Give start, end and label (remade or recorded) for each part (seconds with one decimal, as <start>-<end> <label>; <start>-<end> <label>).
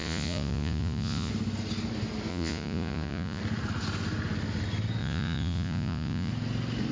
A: 0.0-1.3 remade; 1.3-2.3 recorded; 2.3-3.4 remade; 3.4-5.0 recorded; 5.0-6.3 remade; 6.3-6.9 recorded